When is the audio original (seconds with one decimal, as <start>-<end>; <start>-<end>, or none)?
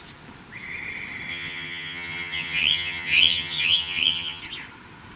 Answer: 0.0-1.3; 4.4-5.2